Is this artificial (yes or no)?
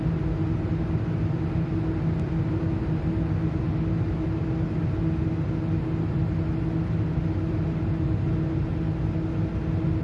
no